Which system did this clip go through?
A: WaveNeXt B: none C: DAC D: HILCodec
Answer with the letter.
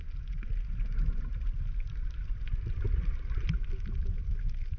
B